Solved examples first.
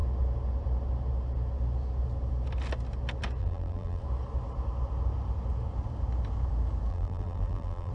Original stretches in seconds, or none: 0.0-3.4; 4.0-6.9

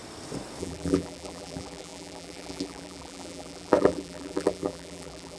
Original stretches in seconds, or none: 0.0-0.6

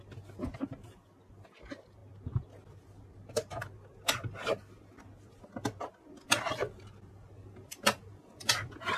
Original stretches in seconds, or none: 0.0-9.0